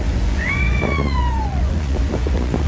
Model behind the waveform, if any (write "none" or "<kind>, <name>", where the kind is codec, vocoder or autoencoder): vocoder, Vocos